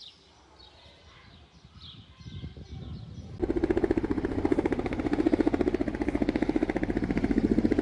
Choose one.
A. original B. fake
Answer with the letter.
A